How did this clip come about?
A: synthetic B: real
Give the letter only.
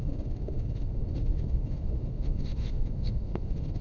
A